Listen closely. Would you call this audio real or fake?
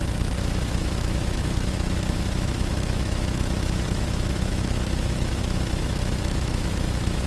fake